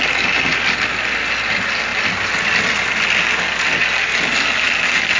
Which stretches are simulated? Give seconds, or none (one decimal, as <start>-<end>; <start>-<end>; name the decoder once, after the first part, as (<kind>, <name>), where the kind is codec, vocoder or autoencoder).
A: none